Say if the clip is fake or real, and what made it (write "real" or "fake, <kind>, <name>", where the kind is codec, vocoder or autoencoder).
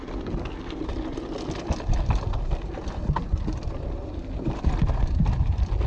real